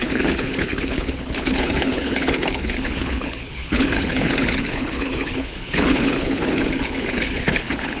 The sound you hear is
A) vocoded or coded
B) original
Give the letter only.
A